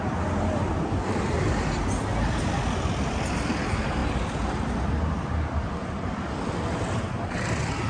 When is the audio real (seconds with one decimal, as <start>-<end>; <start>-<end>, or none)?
0.0-7.9